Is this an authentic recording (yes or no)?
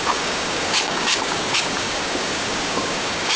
no